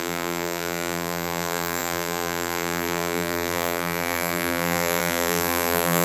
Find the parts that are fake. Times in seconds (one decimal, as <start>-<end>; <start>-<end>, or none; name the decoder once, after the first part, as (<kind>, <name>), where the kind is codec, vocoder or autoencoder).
0.0-6.0 (vocoder, BigVGAN v2)